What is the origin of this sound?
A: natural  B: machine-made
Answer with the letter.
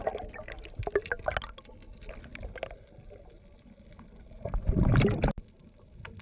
A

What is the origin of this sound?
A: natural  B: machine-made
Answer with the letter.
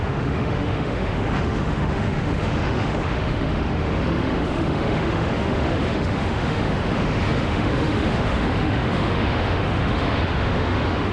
B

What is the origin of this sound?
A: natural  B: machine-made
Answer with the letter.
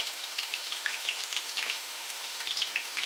B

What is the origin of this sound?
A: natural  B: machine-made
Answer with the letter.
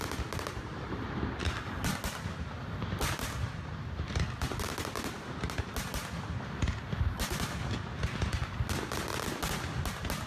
A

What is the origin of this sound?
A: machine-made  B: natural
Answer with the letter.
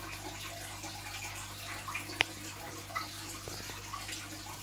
B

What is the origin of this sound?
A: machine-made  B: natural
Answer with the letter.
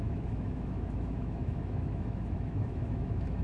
A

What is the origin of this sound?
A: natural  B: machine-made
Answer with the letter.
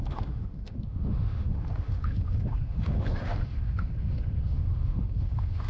B